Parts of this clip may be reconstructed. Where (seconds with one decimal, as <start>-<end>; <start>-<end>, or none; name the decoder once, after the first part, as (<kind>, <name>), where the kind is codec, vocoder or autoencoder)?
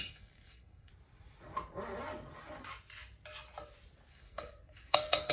0.0-0.9 (codec, SNAC); 4.1-5.3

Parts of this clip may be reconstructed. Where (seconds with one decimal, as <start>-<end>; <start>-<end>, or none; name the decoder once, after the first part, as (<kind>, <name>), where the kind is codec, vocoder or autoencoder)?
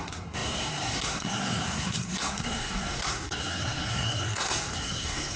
0.0-5.4 (codec, SNAC)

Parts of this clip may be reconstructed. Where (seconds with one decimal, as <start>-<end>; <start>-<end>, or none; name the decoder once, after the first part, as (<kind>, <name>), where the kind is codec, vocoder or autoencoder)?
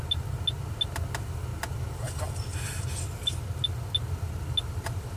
none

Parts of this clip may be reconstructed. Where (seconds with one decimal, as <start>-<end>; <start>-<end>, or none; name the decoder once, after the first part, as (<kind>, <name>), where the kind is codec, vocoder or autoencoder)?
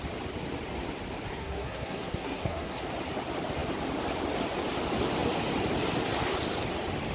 1.3-2.8 (codec, SNAC)